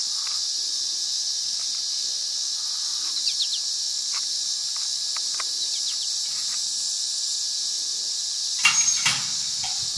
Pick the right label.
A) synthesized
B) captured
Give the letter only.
B